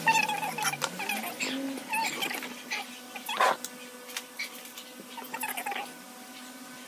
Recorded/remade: recorded